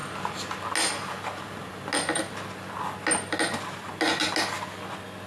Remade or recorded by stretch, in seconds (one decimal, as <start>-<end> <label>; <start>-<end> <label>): 0.0-5.3 recorded